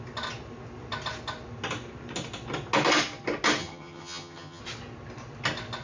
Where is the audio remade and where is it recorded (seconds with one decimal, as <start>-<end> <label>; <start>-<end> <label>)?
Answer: 0.0-3.6 recorded; 3.6-4.6 remade; 4.6-5.8 recorded